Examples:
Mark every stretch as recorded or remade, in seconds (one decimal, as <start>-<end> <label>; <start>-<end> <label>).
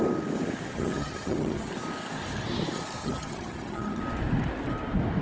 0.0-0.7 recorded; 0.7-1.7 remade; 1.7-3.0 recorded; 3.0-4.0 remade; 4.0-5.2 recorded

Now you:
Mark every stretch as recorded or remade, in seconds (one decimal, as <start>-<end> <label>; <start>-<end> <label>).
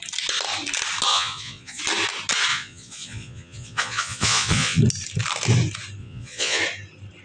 0.0-1.1 recorded; 1.1-1.8 remade; 1.8-2.5 recorded; 2.5-4.8 remade; 4.8-6.0 recorded; 6.0-6.6 remade; 6.6-7.2 recorded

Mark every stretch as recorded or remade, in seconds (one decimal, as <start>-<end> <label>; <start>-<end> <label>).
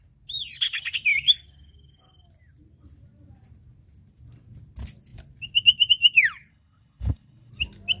0.0-6.5 recorded; 6.5-7.5 remade; 7.5-8.0 recorded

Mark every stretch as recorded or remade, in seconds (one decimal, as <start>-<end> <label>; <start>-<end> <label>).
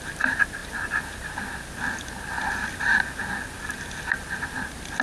0.0-5.0 recorded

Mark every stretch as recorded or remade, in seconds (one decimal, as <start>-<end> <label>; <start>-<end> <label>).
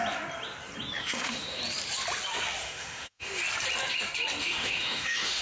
0.0-1.0 recorded; 1.0-1.6 remade; 1.6-2.6 recorded; 2.6-3.4 remade; 3.4-4.4 recorded; 4.4-5.4 remade